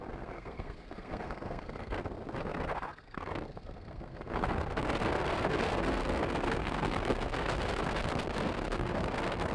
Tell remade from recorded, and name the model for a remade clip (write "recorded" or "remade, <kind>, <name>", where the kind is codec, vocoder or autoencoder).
remade, codec, SNAC